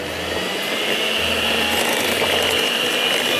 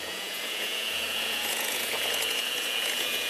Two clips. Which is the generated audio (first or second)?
second